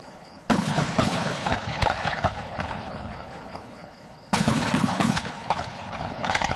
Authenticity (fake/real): fake